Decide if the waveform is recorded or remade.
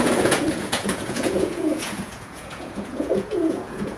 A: remade